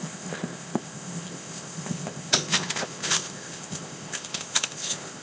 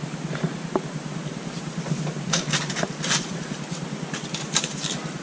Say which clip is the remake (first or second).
first